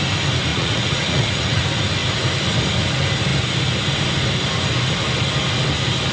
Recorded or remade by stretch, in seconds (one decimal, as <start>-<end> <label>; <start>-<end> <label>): 0.0-0.5 recorded; 0.5-1.6 remade; 1.6-6.1 recorded